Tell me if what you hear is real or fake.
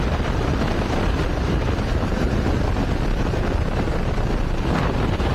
real